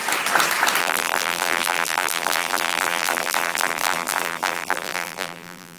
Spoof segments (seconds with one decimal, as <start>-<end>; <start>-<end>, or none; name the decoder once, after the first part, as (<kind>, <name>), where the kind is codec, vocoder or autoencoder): 0.8-5.8 (vocoder, BigVGAN v2)